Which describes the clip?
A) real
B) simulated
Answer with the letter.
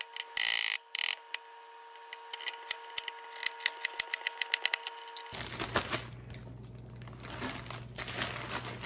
A